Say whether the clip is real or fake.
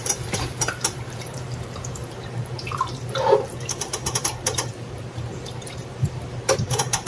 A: fake